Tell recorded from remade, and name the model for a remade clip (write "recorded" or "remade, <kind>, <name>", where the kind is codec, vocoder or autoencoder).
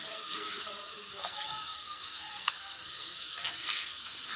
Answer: remade, codec, SNAC